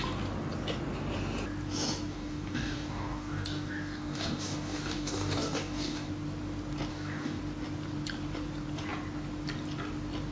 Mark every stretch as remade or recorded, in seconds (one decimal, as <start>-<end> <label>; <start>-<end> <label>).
0.0-2.1 recorded; 2.1-6.1 remade; 6.1-6.9 recorded; 6.9-7.4 remade; 7.4-10.3 recorded